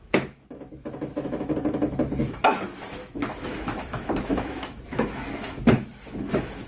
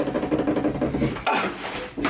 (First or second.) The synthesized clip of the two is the first